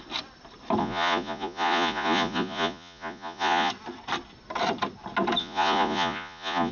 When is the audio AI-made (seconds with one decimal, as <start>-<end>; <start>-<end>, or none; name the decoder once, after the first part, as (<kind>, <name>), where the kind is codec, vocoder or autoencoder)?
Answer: 0.8-3.7 (vocoder, Vocos); 5.4-6.7